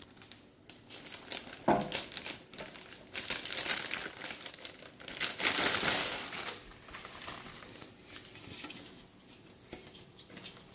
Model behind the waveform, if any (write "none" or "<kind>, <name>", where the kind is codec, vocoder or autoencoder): none